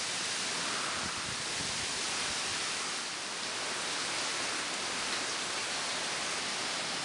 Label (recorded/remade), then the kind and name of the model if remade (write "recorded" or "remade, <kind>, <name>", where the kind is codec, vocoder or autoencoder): remade, vocoder, BigVGAN v2